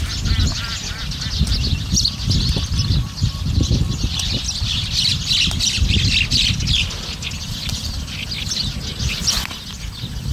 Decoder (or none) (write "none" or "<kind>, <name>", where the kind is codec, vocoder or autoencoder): none